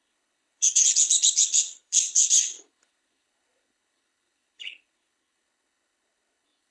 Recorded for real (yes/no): no